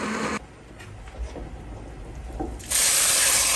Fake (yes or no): no